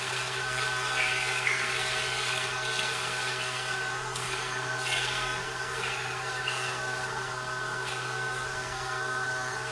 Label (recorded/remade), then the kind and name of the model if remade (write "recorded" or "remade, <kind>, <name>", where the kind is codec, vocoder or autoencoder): remade, codec, SNAC